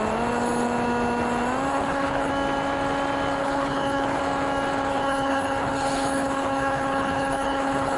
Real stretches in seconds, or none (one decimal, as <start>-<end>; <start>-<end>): 0.0-1.7; 2.3-3.4; 4.2-4.9